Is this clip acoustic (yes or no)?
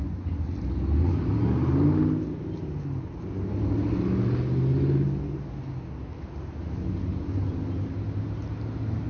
yes